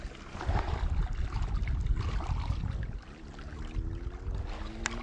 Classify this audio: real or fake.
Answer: real